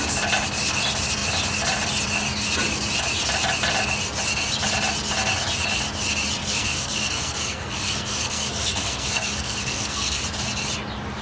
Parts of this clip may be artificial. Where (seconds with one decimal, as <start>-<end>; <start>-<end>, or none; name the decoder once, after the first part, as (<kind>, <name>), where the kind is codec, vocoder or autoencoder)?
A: 6.4-10.2 (codec, SNAC)